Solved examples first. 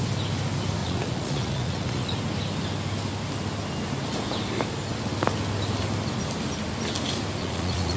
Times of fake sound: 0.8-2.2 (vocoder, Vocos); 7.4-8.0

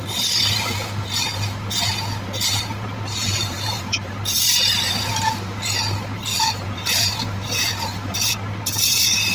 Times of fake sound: 2.7-4.2 (vocoder, BigVGAN v2); 6.3-8.3

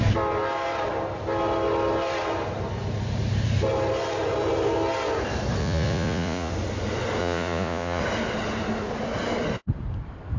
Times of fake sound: 5.6-6.5 (vocoder, Vocos); 7.2-8.0